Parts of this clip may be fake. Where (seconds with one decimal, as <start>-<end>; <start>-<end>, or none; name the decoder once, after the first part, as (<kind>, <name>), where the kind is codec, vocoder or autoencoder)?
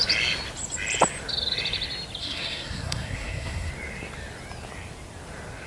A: 2.2-3.7 (codec, SNAC)